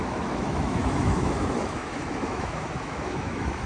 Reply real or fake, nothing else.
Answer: fake